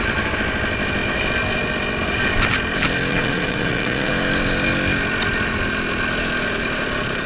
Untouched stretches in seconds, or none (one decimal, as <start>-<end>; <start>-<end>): 0.0-3.1; 4.1-7.3

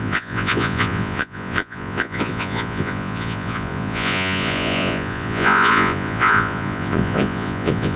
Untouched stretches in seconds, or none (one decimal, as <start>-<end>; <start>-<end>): none

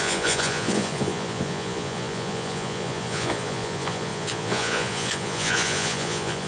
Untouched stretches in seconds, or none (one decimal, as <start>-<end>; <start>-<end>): none

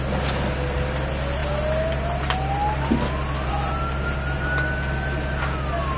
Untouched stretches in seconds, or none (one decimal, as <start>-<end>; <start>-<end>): 0.0-6.0

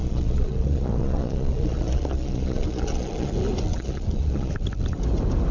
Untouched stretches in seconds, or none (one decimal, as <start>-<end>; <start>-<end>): 3.3-3.7; 4.5-5.5

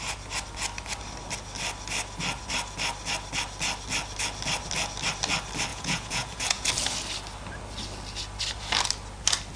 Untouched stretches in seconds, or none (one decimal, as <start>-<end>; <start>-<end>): 0.0-5.7; 6.7-9.6